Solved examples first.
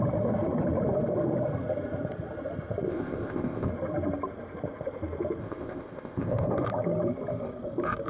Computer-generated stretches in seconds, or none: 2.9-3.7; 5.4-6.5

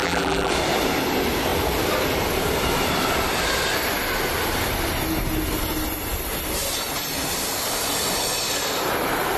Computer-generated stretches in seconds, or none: 0.0-0.5

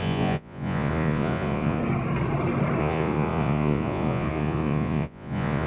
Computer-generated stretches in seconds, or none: 0.0-1.8; 2.8-5.7

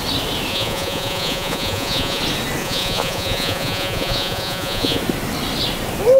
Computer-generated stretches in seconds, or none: 0.5-2.2; 2.6-5.0

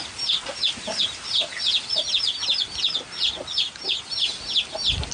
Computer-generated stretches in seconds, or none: none

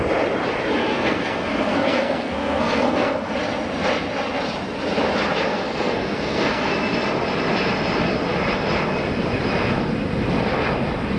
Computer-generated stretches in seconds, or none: 0.8-3.3; 5.5-6.7

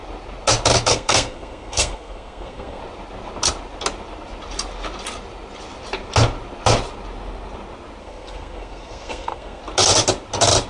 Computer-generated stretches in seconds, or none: 0.9-2.8; 8.0-9.6